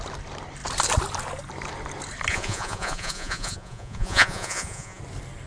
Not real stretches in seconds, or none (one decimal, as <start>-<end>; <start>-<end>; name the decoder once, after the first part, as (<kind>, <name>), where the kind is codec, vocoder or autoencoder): 2.3-5.0 (vocoder, Vocos)